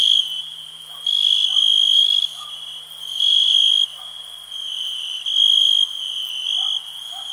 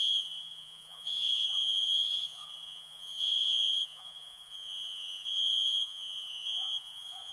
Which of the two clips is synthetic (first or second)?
second